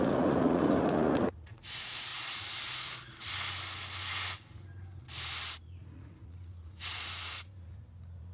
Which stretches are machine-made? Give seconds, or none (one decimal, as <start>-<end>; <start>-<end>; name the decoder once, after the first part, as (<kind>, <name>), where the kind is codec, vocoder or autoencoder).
0.0-2.1 (vocoder, Vocos); 5.6-8.3